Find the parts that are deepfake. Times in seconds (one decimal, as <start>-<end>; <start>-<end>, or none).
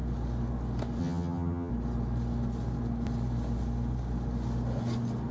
1.0-1.7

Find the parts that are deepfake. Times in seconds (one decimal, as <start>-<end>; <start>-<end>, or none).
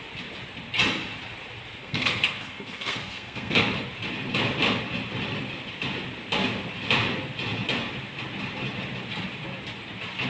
1.8-3.7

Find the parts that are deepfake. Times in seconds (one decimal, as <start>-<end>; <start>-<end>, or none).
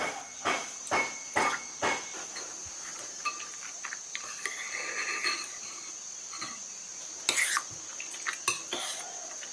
2.9-5.9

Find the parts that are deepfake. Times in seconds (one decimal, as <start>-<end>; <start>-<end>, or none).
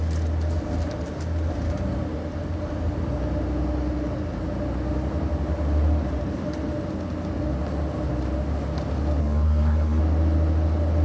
9.2-10.0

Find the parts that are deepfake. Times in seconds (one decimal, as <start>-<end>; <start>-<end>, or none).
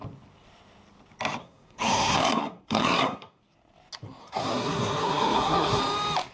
1.4-3.4; 4.2-5.8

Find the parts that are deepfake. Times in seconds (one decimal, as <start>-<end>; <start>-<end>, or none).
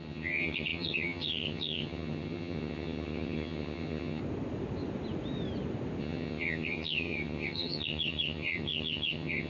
0.0-4.2; 6.0-9.5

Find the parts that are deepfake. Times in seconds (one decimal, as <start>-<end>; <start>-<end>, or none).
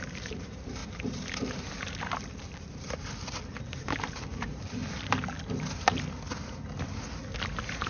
0.0-0.8; 3.6-4.8; 7.4-7.9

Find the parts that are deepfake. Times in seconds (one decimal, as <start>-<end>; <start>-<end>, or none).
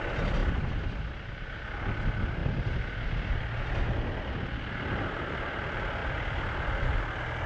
6.0-7.0